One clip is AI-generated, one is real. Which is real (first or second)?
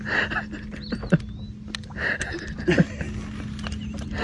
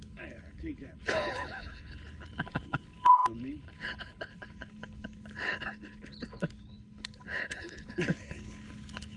first